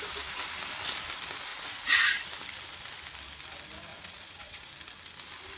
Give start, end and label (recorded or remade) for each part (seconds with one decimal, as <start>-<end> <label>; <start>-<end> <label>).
0.0-1.5 recorded; 1.5-2.2 remade; 2.2-3.9 recorded; 3.9-4.7 remade; 4.7-5.6 recorded